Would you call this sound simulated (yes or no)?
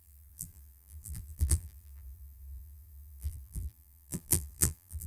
yes